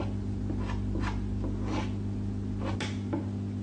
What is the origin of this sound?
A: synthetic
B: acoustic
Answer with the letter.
B